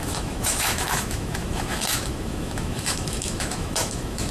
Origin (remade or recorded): remade